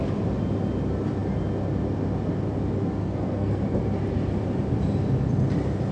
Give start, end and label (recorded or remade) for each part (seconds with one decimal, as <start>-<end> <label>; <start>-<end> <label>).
0.0-3.0 recorded; 3.0-3.6 remade; 3.6-5.9 recorded